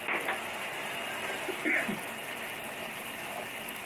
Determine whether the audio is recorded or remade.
recorded